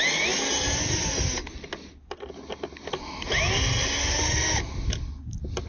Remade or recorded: recorded